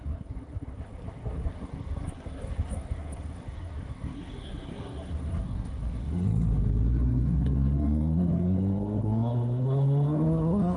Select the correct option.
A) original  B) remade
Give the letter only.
B